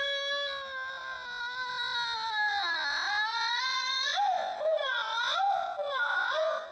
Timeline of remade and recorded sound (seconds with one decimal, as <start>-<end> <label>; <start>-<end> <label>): 0.0-3.3 recorded; 3.3-6.7 remade